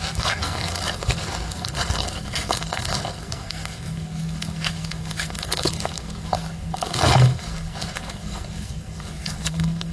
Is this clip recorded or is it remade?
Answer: remade